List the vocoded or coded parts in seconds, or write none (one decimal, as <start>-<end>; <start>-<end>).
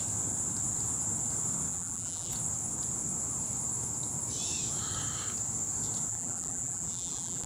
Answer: 1.7-2.3; 6.1-7.5